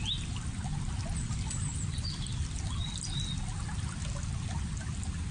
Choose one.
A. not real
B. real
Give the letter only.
B